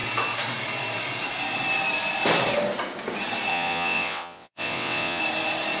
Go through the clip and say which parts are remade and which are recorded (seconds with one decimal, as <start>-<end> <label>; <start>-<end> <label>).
0.0-3.5 recorded; 3.5-5.2 remade; 5.2-5.8 recorded